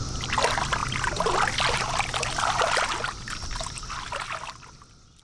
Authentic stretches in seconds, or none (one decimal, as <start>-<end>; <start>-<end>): 0.0-5.2